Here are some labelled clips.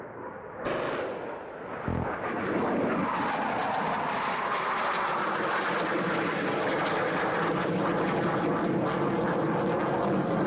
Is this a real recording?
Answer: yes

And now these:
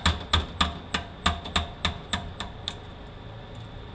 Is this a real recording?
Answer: yes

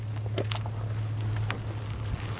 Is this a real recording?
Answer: yes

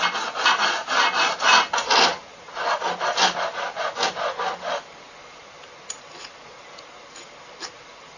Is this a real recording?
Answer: yes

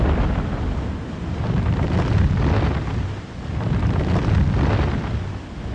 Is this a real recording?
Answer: yes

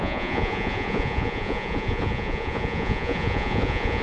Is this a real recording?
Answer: no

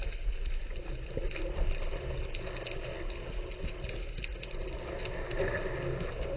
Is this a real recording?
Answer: yes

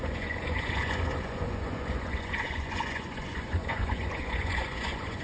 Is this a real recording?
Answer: no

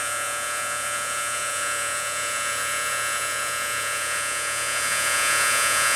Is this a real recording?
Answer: no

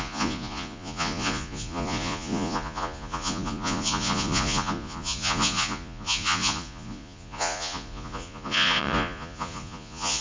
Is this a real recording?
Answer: no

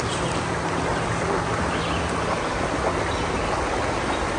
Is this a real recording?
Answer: yes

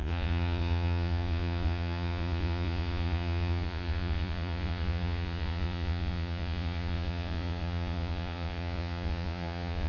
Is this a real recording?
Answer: no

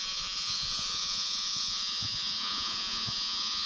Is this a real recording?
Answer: no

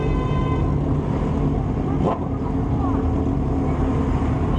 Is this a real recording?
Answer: yes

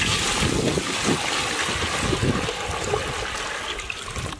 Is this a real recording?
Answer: yes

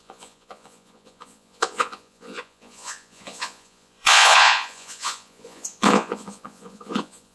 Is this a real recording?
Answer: no